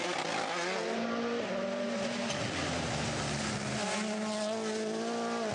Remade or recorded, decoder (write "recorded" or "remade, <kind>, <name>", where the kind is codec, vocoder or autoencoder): recorded